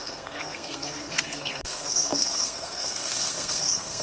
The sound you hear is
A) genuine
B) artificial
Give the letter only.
B